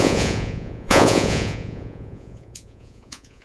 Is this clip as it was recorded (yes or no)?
no